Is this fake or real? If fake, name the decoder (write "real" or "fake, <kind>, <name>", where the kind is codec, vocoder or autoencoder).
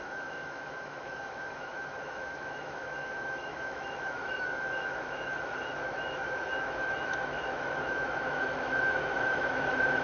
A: fake, autoencoder, DAC-VAE